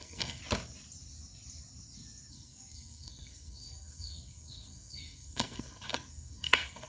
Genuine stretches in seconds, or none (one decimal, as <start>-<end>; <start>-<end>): 0.4-2.3